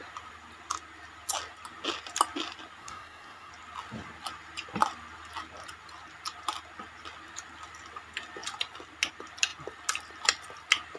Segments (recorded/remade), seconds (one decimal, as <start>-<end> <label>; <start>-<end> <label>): 0.0-2.8 recorded; 2.8-3.5 remade; 3.5-11.0 recorded